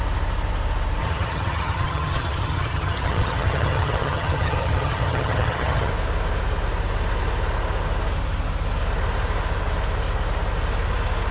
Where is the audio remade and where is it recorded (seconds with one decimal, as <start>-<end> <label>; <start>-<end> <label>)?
0.0-1.0 recorded; 1.0-5.9 remade; 5.9-11.3 recorded

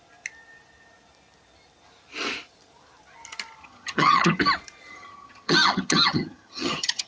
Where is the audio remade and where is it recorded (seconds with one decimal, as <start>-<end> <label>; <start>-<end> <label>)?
0.0-3.6 recorded; 3.6-4.4 remade; 4.4-4.9 recorded; 4.9-7.1 remade

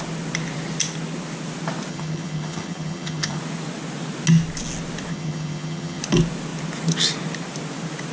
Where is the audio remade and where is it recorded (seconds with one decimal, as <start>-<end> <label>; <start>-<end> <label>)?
0.0-1.9 recorded; 1.9-3.4 remade; 3.4-5.1 recorded; 5.1-6.0 remade; 6.0-8.1 recorded